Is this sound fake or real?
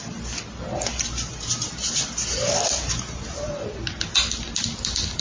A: real